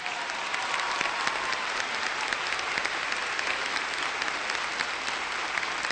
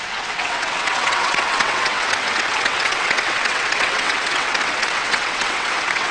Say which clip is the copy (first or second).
second